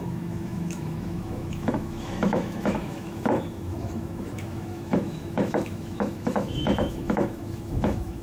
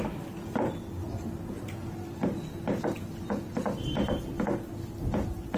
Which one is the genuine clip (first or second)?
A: second